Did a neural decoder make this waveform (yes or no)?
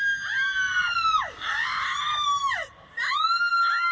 no